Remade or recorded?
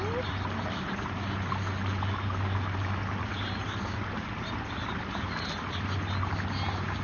recorded